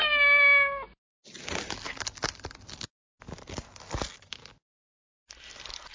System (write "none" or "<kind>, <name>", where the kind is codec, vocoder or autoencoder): none